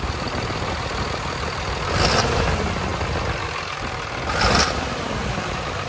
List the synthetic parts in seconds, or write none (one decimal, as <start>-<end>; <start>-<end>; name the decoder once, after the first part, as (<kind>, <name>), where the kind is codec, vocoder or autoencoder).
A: none